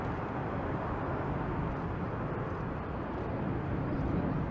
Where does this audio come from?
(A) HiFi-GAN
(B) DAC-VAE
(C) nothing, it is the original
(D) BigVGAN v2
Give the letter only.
C